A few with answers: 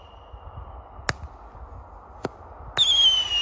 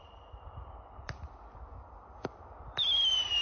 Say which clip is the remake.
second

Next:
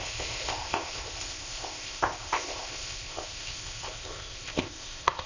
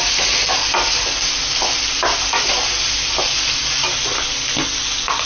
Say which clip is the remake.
first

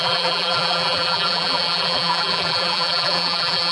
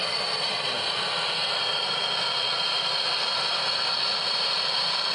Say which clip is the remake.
first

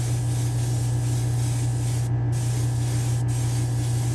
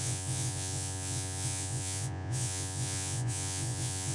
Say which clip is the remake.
second